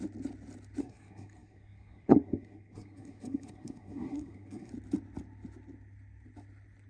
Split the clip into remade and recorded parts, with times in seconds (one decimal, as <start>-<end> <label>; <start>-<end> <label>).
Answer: 0.0-0.8 recorded; 0.8-4.7 remade; 4.7-6.9 recorded